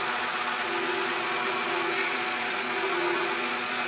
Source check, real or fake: fake